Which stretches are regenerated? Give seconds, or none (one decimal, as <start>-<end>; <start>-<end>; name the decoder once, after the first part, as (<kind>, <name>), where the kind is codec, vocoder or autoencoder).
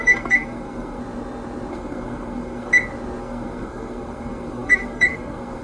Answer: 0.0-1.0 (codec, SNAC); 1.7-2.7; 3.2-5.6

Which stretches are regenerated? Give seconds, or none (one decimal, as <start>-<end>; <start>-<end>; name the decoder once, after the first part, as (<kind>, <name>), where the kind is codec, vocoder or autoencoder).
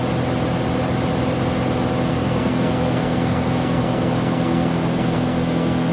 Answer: 2.1-5.9 (codec, SNAC)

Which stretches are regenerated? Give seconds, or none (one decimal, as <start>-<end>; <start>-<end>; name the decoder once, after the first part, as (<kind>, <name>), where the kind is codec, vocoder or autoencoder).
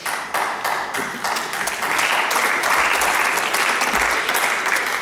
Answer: none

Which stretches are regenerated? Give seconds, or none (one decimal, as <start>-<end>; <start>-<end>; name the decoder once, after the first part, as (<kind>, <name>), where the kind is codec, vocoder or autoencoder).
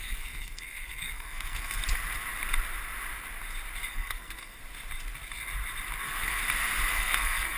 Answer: 0.0-1.8 (codec, SNAC); 3.9-4.6; 6.0-6.4; 6.9-7.6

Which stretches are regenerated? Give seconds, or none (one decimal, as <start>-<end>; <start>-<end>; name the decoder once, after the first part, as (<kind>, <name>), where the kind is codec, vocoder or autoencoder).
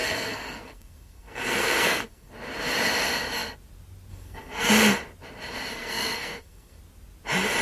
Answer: 0.0-2.3 (codec, SNAC); 4.1-4.7; 5.7-6.8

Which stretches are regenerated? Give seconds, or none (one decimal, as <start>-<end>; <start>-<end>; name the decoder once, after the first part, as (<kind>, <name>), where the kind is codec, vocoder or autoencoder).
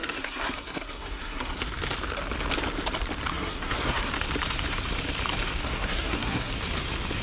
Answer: 0.0-1.5 (codec, SNAC); 3.3-4.1; 5.6-6.5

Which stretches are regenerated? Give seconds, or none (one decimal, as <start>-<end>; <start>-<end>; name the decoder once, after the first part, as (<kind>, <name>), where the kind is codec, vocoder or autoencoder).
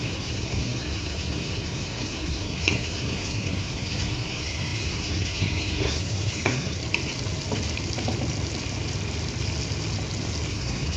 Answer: 0.0-6.8 (codec, SNAC); 10.5-11.0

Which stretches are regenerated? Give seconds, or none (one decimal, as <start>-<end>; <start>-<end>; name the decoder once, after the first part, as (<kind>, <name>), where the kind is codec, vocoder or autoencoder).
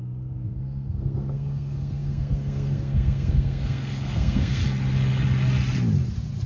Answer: 0.0-4.6 (codec, SNAC)